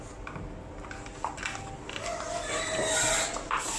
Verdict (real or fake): real